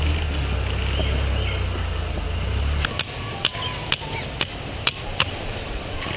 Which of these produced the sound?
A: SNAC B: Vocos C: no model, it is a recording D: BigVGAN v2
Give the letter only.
C